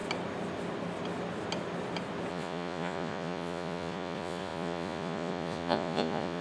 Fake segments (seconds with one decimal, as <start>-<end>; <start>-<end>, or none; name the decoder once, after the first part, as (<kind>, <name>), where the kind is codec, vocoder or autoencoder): 2.3-6.4 (vocoder, Vocos)